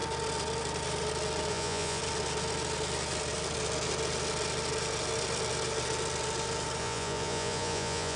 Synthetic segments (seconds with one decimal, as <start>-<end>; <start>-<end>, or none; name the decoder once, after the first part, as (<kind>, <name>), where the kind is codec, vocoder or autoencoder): 1.5-2.0 (vocoder, Vocos); 6.8-8.2